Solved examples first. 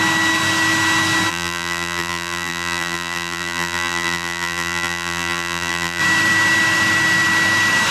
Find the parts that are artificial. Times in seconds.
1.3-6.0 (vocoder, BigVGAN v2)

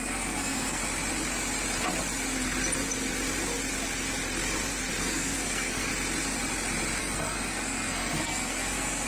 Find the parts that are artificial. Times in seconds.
0.0-0.8 (codec, SNAC); 5.0-5.9; 7.0-9.1

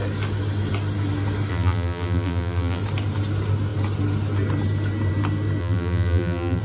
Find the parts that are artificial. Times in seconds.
1.5-2.8 (vocoder, BigVGAN v2); 5.6-6.6